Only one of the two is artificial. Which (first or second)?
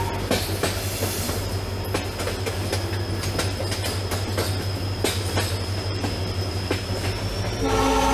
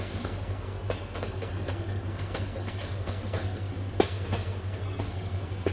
second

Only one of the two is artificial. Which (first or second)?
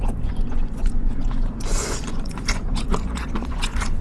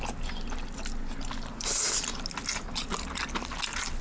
first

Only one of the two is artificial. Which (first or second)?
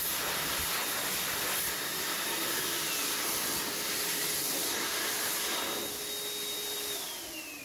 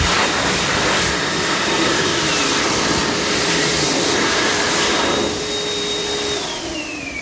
second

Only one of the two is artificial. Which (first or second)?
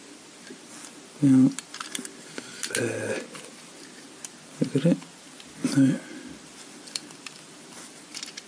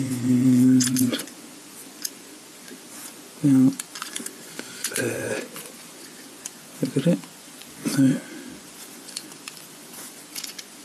second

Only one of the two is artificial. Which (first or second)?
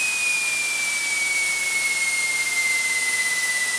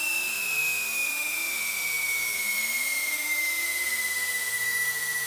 second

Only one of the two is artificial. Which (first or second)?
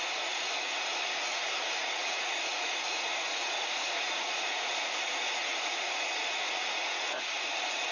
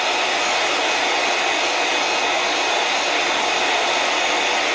first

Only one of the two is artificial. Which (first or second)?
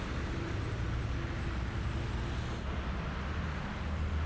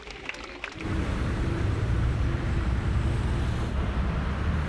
second